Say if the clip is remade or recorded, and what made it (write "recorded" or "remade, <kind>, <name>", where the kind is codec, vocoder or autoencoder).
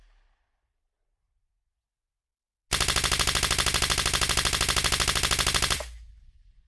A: recorded